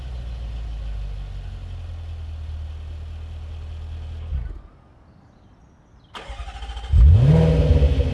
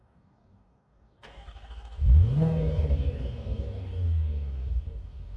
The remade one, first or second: second